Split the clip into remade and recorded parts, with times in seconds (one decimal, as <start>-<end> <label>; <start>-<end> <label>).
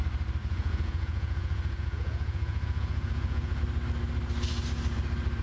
0.0-0.4 recorded; 0.4-3.6 remade; 3.6-5.4 recorded